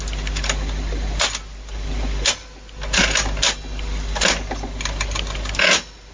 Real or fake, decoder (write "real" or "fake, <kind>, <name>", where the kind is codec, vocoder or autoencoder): real